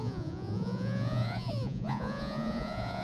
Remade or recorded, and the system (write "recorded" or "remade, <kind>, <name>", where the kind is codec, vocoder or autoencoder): remade, vocoder, Vocos